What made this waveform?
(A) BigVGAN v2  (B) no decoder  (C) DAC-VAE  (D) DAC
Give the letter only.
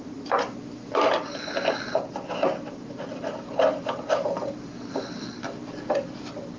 B